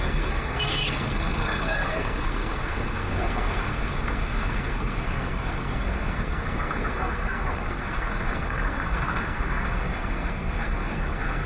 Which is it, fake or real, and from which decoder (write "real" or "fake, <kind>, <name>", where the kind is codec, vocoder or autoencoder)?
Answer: fake, codec, SNAC